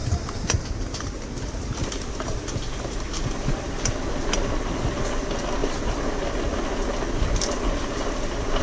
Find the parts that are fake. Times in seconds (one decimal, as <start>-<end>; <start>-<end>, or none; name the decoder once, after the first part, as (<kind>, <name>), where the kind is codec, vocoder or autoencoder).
none